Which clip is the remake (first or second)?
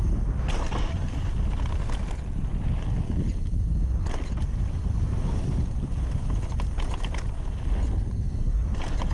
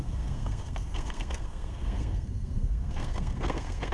second